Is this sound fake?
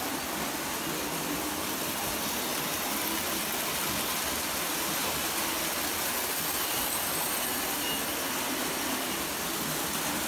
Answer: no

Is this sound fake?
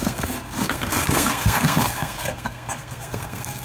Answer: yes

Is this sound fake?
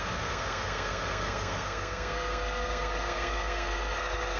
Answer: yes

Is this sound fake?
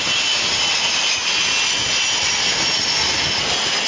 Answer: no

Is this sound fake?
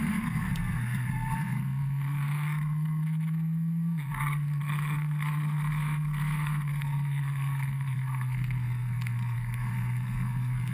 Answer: yes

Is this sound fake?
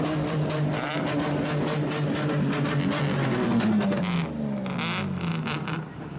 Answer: no